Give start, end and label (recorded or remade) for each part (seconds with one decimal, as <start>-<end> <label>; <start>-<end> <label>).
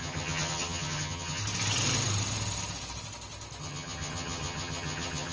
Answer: 0.0-1.4 remade; 1.4-3.6 recorded; 3.6-5.3 remade